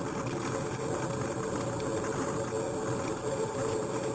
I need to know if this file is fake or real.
real